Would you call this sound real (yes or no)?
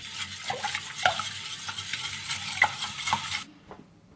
no